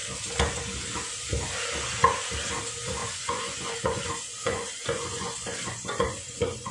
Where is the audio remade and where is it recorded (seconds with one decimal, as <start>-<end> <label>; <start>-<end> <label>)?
0.0-3.0 recorded; 3.0-6.7 remade